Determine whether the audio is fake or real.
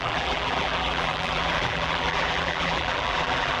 fake